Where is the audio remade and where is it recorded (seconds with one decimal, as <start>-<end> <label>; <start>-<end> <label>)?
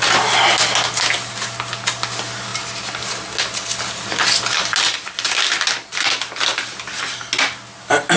0.0-8.2 recorded